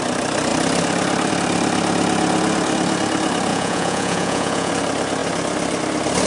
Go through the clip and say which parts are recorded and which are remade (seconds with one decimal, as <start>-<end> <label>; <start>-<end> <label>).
0.0-3.5 recorded; 3.5-4.7 remade; 4.7-6.3 recorded